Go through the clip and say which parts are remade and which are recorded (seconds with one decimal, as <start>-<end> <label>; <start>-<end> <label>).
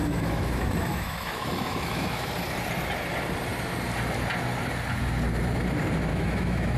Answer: 0.0-2.3 remade; 2.3-6.1 recorded; 6.1-6.8 remade